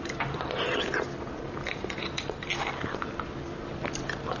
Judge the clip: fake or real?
real